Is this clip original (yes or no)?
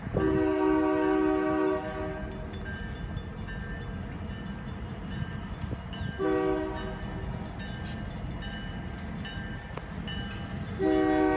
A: yes